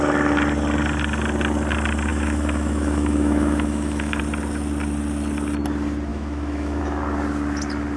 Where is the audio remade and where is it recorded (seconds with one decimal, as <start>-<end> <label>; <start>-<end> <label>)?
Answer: 0.0-2.1 recorded; 2.1-4.2 remade; 4.2-6.1 recorded; 6.1-6.8 remade; 6.8-8.0 recorded